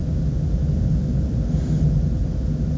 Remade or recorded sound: recorded